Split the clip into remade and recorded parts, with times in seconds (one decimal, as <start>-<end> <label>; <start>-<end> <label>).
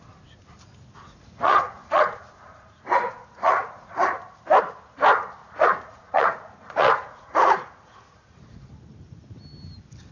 0.0-1.1 recorded; 1.1-3.9 remade; 3.9-5.4 recorded; 5.4-8.7 remade; 8.7-10.1 recorded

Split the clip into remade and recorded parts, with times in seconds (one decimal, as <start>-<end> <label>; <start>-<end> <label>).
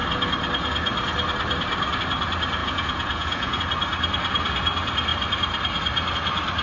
0.0-2.6 recorded; 2.6-3.6 remade; 3.6-6.6 recorded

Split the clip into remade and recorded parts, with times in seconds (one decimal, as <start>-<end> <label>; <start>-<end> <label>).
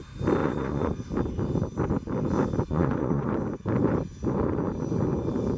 0.0-0.4 recorded; 0.4-0.9 remade; 0.9-2.7 recorded; 2.7-3.3 remade; 3.3-5.6 recorded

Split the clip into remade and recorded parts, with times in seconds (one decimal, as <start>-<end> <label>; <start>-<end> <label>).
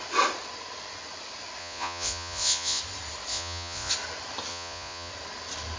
0.0-1.6 recorded; 1.6-2.8 remade; 2.8-3.3 recorded; 3.3-3.9 remade; 3.9-4.5 recorded; 4.5-5.1 remade; 5.1-5.8 recorded